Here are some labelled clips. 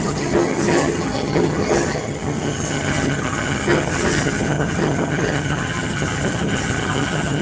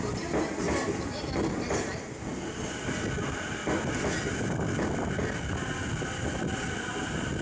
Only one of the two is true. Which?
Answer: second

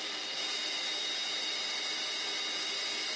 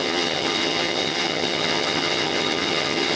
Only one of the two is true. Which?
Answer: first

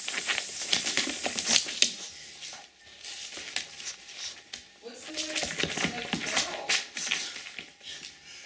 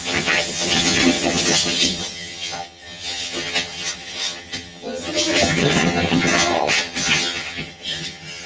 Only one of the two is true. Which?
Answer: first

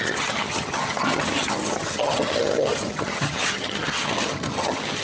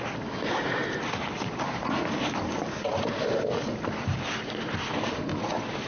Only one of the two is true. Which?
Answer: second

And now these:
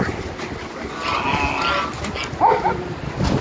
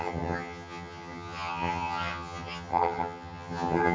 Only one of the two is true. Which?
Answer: first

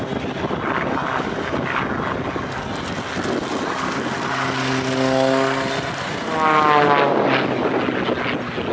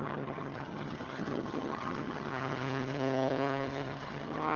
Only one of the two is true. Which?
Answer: first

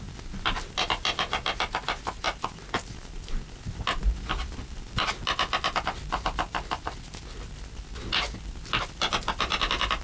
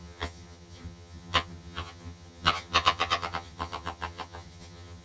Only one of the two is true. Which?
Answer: first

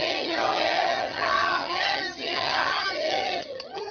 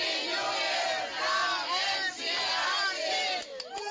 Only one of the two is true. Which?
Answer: second